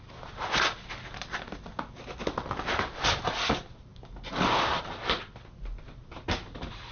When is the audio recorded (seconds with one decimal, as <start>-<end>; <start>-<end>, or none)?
0.0-6.9